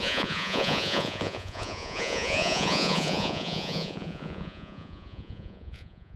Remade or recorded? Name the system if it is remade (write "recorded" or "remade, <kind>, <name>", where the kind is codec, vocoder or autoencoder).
remade, vocoder, Vocos